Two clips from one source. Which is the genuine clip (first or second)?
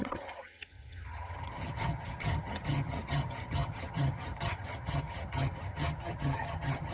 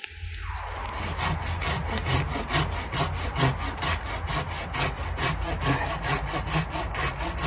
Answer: second